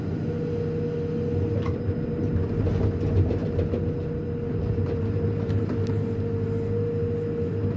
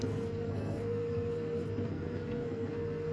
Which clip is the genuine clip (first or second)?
first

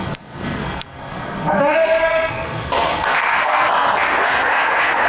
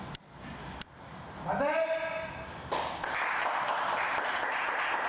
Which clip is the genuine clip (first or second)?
second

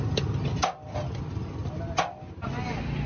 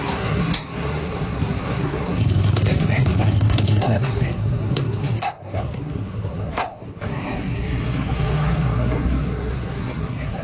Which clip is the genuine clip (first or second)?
first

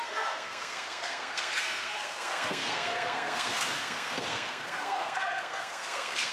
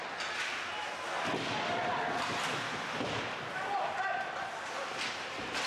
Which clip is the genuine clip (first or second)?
second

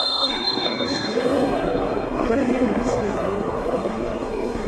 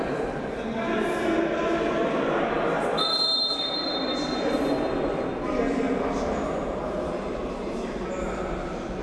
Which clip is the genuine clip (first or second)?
second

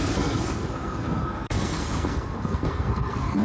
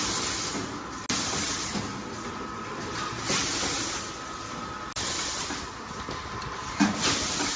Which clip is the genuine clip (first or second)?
second